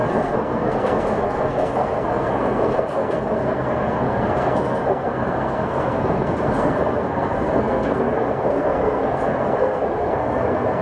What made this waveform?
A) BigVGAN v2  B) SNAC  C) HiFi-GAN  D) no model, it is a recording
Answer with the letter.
B